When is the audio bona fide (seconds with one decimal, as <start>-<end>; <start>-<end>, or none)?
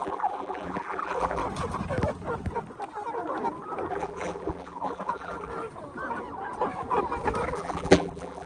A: 1.4-3.9; 5.5-7.5